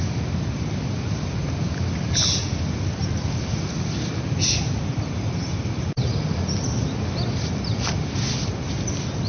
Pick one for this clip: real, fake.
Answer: fake